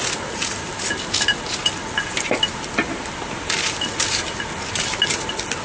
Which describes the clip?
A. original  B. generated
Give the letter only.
A